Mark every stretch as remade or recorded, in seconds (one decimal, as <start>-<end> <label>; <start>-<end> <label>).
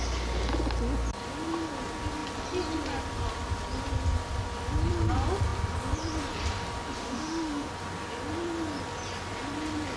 0.0-7.0 recorded; 7.0-7.7 remade; 7.7-10.0 recorded